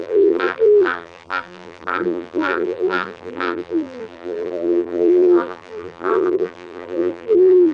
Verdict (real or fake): fake